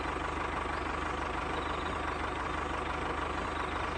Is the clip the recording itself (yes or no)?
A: yes